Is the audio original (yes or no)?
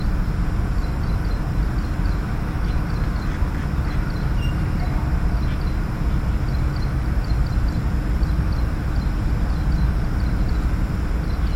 yes